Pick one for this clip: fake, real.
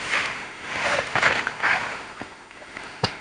fake